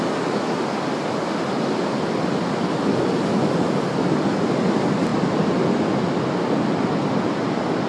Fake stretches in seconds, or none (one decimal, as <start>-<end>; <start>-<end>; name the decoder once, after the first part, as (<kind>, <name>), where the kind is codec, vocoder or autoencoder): none